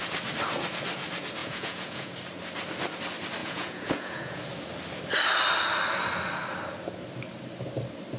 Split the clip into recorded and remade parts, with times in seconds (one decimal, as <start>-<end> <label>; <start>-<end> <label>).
0.0-1.4 recorded; 1.4-2.1 remade; 2.1-3.4 recorded; 3.4-4.4 remade; 4.4-8.2 recorded